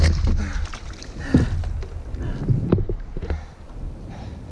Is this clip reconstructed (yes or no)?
no